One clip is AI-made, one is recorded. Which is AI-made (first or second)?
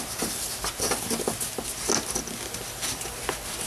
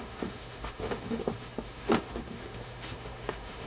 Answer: second